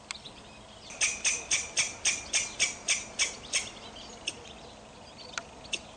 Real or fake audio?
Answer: real